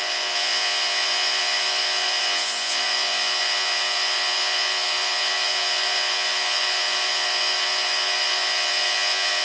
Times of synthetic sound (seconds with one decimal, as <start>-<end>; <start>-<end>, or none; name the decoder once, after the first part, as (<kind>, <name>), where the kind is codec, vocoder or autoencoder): 0.0-9.4 (vocoder, Vocos)